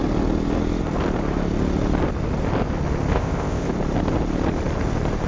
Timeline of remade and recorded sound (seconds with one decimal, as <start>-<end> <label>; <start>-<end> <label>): 0.0-3.1 recorded; 3.1-3.7 remade; 3.7-5.3 recorded

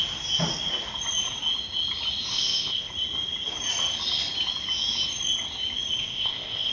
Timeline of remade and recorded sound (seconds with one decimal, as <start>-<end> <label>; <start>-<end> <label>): 0.0-2.3 recorded; 2.3-2.9 remade; 2.9-6.0 recorded; 6.0-6.7 remade

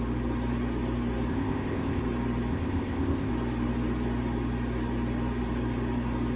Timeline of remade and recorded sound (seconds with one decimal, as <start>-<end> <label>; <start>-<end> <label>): 0.0-1.3 recorded; 1.3-2.0 remade; 2.0-2.5 recorded; 2.5-3.3 remade; 3.3-6.4 recorded